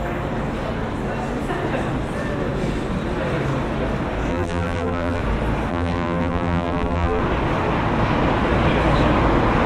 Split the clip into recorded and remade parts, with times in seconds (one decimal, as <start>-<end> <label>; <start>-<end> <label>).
0.0-4.3 recorded; 4.3-5.2 remade; 5.2-5.7 recorded; 5.7-7.2 remade; 7.2-9.7 recorded